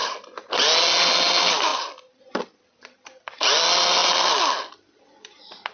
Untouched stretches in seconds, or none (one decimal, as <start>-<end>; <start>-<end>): 0.5-5.7